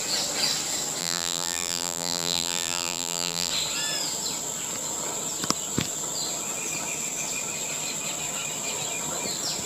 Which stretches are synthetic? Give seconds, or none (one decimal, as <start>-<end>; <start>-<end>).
1.0-3.5